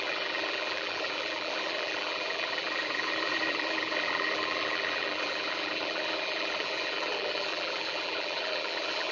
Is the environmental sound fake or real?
fake